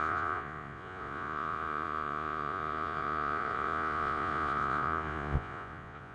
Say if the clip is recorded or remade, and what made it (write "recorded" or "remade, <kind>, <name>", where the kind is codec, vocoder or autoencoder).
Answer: remade, vocoder, Vocos